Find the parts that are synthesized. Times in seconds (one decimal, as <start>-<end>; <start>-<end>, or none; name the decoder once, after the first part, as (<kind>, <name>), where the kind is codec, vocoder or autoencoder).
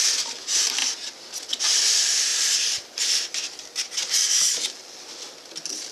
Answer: 0.0-0.8 (vocoder, BigVGAN v2); 1.6-5.9